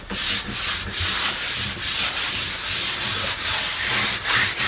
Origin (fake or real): real